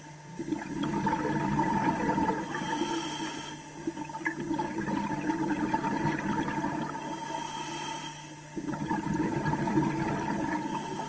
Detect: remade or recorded recorded